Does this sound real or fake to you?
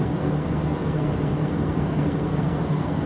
fake